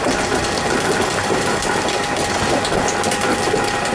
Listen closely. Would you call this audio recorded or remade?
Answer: recorded